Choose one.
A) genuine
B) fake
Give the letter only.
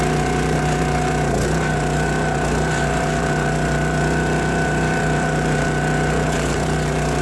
B